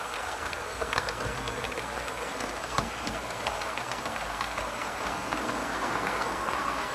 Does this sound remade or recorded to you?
remade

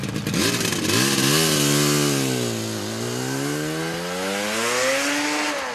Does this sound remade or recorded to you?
recorded